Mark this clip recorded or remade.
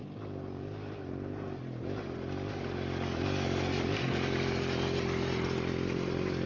recorded